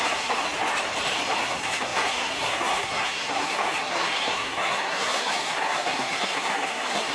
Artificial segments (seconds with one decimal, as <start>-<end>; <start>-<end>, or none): 0.0-0.4; 1.4-7.1